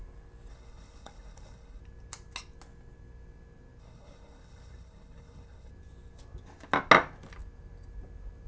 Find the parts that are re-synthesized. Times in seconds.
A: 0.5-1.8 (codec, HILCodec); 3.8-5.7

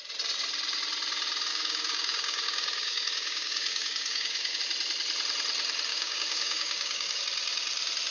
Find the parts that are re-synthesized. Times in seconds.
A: 1.5-4.6 (codec, DAC); 5.9-7.2

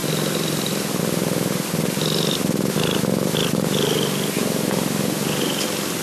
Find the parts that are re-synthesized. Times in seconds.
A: none

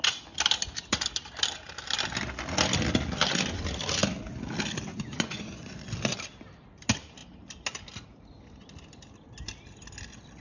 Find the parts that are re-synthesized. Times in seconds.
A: 4.9-5.8 (vocoder, Vocos)

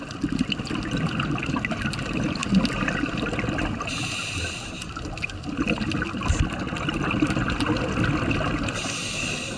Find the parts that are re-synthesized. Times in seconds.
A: none

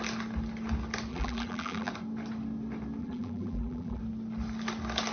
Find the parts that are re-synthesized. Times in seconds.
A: 1.1-1.9 (vocoder, BigVGAN v2); 3.0-4.0